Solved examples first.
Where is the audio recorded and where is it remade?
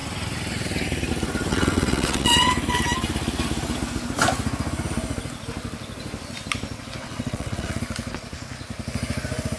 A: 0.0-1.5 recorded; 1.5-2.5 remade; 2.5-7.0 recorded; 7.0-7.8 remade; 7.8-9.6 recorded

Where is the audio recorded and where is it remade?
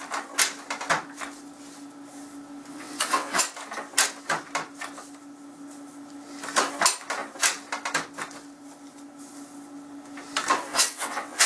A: 0.0-2.7 recorded; 2.7-3.4 remade; 3.4-10.7 recorded; 10.7-11.5 remade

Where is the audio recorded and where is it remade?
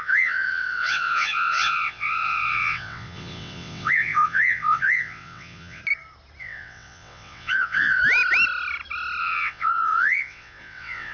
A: 0.0-5.8 remade; 5.8-6.4 recorded; 6.4-8.0 remade; 8.0-9.2 recorded; 9.2-11.1 remade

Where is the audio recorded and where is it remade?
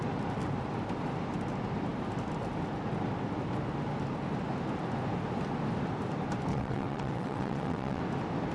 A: 0.0-6.5 recorded; 6.5-8.0 remade; 8.0-8.5 recorded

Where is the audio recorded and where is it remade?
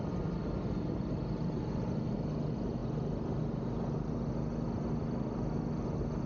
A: 0.0-6.3 recorded